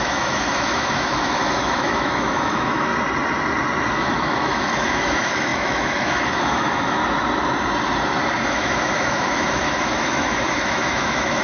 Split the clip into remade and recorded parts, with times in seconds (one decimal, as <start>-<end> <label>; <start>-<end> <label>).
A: 0.0-2.9 remade; 2.9-3.9 recorded; 3.9-7.0 remade; 7.0-8.5 recorded; 8.5-11.4 remade